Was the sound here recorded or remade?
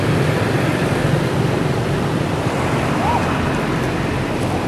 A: recorded